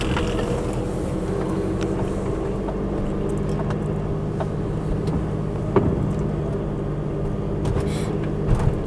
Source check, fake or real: real